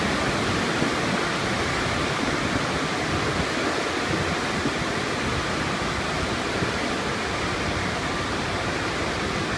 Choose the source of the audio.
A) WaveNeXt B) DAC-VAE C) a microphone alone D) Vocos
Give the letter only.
C